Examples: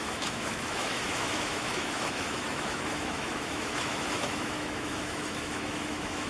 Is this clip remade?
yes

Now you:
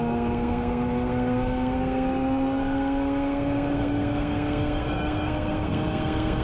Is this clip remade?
yes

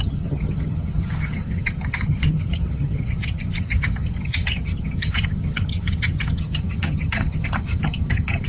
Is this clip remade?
yes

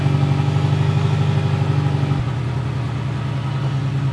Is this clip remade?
no